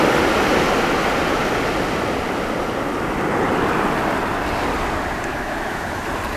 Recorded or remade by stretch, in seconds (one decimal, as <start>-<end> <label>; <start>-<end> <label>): 0.0-5.3 recorded; 5.3-6.0 remade; 6.0-6.4 recorded